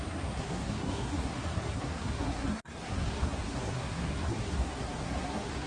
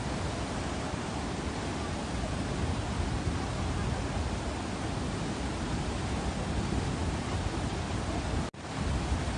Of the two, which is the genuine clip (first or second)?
second